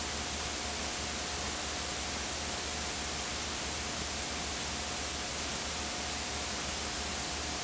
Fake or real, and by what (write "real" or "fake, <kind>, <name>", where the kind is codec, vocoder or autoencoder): real